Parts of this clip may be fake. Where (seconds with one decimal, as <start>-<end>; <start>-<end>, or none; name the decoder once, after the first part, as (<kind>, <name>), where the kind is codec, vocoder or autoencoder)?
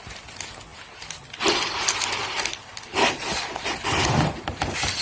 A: none